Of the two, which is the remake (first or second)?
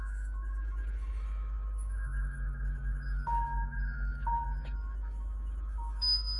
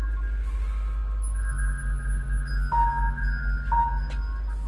first